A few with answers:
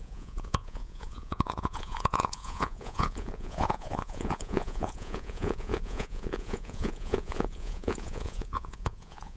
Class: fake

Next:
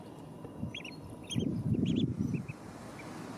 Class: real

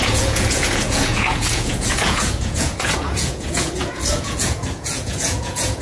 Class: fake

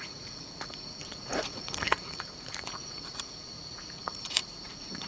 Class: fake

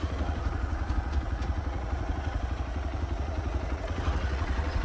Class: fake